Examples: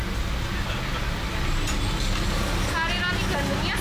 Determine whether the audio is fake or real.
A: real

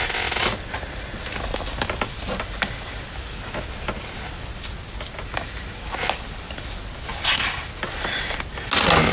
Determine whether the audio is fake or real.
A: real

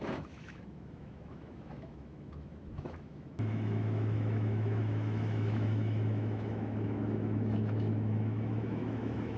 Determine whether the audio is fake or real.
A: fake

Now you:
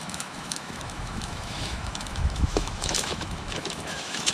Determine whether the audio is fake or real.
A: fake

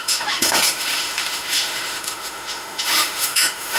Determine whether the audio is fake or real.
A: fake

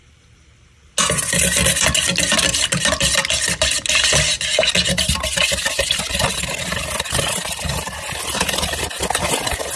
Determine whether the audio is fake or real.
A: real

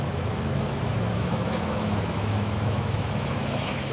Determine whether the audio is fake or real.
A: fake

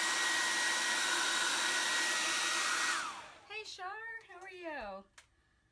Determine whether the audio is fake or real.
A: real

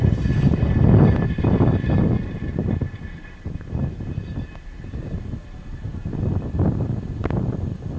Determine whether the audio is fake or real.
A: real